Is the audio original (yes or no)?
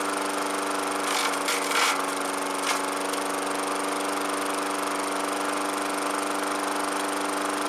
yes